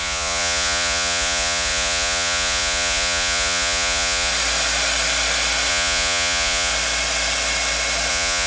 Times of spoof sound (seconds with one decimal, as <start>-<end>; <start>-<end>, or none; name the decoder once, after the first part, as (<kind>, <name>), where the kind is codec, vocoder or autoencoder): 0.0-4.3 (vocoder, Vocos); 5.7-6.7; 8.1-8.5